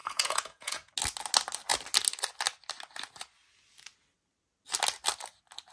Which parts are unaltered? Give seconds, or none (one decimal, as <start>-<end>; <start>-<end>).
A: 0.9-5.7